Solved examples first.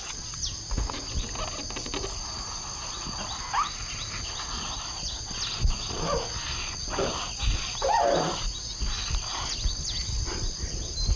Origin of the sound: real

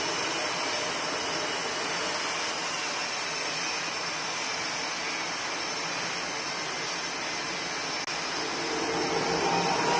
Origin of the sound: real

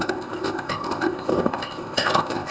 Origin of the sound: fake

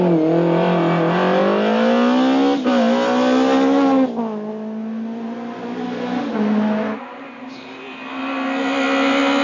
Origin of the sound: real